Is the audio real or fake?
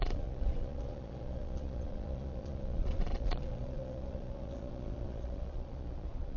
fake